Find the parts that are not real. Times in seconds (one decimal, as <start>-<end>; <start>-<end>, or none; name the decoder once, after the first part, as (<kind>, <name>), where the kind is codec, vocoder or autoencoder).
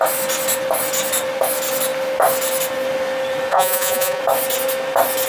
3.5-4.2 (vocoder, Vocos)